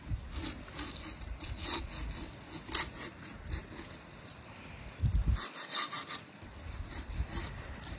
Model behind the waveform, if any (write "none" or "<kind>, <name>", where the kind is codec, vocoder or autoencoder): none